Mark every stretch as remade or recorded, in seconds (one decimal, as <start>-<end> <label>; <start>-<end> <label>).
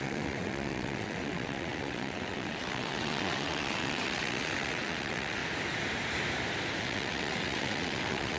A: 0.0-5.4 remade; 5.4-6.8 recorded; 6.8-8.4 remade